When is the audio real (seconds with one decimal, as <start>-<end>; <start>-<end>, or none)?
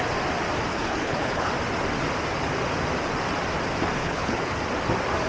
0.0-0.7; 1.5-4.0; 4.6-5.3